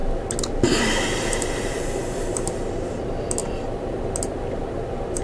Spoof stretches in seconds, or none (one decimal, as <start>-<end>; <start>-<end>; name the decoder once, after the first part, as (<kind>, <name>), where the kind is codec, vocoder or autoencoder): 3.4-4.0 (vocoder, BigVGAN v2)

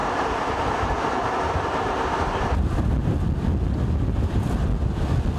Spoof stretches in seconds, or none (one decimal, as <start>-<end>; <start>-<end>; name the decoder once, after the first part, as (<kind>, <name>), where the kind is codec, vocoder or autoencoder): 0.0-2.9 (vocoder, BigVGAN v2)